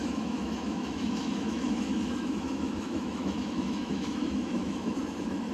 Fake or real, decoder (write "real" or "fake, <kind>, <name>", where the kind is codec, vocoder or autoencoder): fake, autoencoder, DAC-VAE